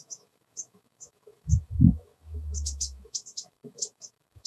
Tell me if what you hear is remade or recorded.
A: remade